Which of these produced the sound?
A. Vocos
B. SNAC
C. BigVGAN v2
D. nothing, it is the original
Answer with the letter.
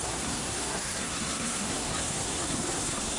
B